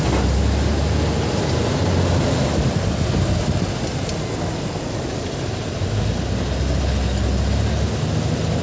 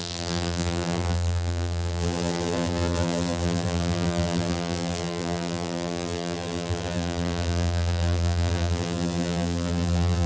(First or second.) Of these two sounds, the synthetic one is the second